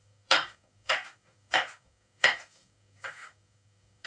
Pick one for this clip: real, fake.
fake